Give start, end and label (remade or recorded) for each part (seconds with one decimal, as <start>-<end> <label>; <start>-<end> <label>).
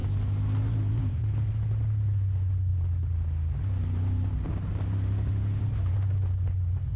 0.0-7.0 recorded